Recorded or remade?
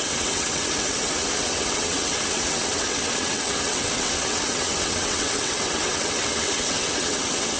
remade